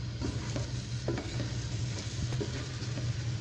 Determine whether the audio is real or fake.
real